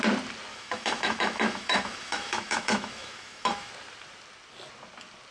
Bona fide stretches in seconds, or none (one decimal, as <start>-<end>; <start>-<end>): 0.0-0.5; 3.7-5.3